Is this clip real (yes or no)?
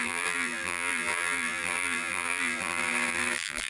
no